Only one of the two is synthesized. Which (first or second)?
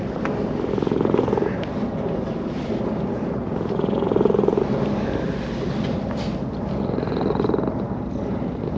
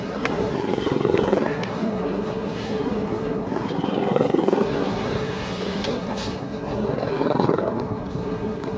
second